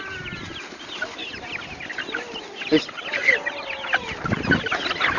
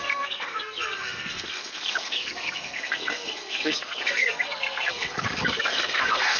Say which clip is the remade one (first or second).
second